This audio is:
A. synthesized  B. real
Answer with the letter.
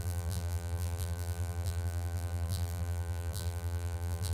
A